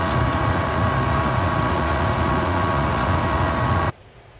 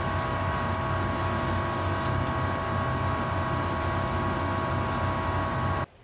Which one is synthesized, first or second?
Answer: first